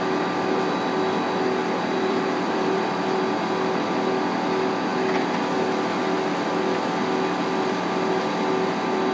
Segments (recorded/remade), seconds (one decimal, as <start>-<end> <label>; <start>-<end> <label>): 0.0-1.6 recorded; 1.6-3.2 remade; 3.2-9.1 recorded